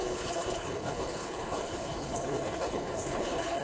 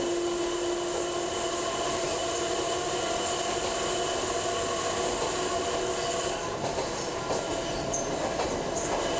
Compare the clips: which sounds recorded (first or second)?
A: second